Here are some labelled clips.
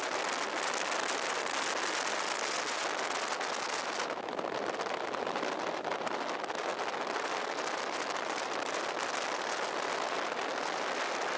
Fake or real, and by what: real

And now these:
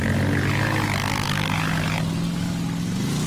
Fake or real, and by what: real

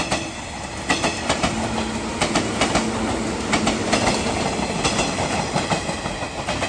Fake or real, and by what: real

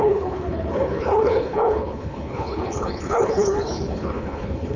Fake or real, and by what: fake, codec, HILCodec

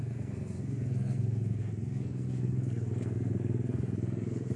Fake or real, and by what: fake, codec, SNAC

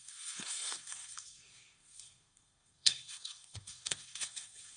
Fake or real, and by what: fake, codec, SNAC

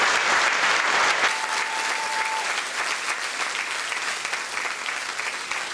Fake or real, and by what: real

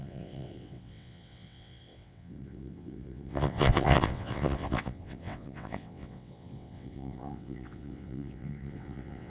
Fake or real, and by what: fake, vocoder, WaveNeXt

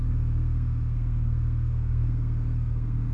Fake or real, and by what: fake, codec, SNAC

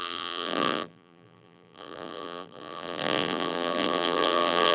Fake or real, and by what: fake, vocoder, BigVGAN v2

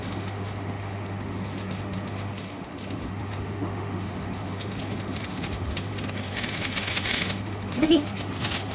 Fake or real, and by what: fake, autoencoder, DAC-VAE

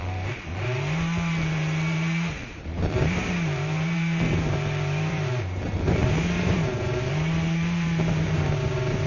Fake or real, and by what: fake, vocoder, BigVGAN v2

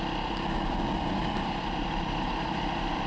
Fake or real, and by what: real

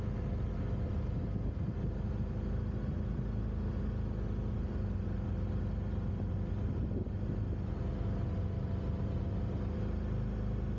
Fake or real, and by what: real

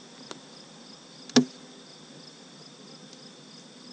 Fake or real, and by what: real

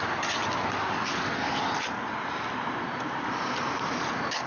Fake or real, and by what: real